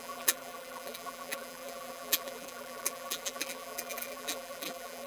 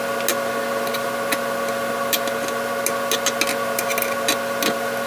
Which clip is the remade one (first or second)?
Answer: first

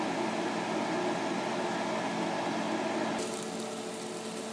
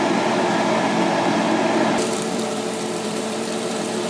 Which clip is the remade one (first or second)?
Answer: second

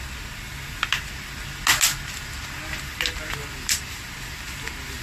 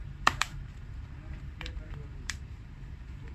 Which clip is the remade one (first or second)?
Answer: second